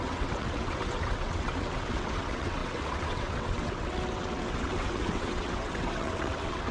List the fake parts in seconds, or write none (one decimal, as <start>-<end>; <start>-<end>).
0.0-6.7